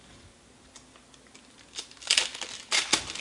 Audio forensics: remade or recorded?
recorded